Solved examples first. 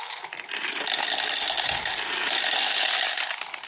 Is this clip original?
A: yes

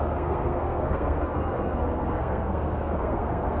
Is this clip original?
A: no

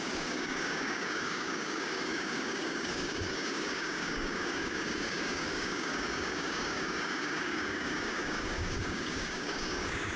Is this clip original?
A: no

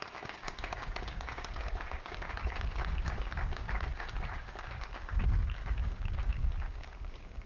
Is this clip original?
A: no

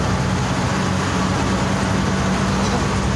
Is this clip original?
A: yes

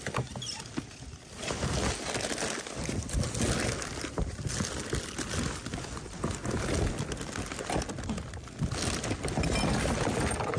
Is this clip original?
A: yes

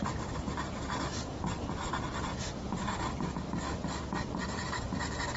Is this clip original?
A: no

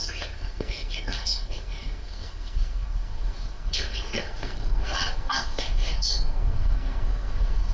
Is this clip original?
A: no